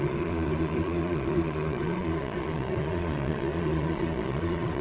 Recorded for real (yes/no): no